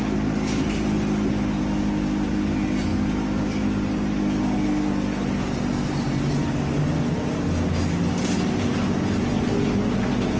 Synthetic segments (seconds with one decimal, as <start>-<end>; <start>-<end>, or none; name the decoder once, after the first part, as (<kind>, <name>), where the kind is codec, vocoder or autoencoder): none